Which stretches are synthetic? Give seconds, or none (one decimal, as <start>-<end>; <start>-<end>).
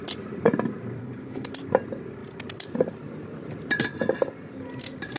1.0-1.5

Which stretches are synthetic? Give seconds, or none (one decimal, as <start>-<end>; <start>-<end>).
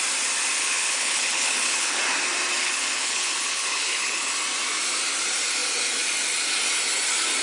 0.6-2.0; 2.6-4.3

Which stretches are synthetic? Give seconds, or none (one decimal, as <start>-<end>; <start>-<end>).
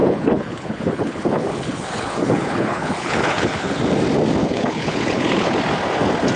0.0-3.8; 4.4-5.6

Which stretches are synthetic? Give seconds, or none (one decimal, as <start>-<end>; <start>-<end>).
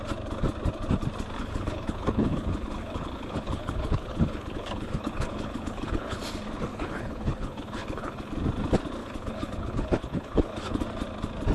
1.4-6.2; 6.7-8.3; 9.0-10.8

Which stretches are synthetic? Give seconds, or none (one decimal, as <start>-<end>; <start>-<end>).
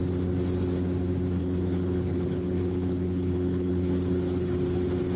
1.4-4.5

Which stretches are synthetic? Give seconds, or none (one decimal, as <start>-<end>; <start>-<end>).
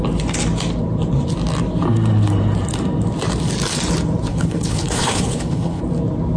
4.3-5.8